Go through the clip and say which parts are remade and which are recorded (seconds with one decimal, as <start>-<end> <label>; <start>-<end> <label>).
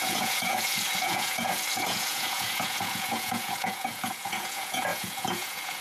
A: 0.0-5.8 remade